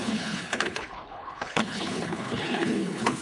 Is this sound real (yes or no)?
no